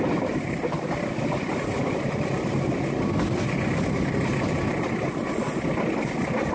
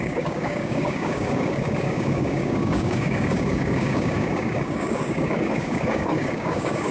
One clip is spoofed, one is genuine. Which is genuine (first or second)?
first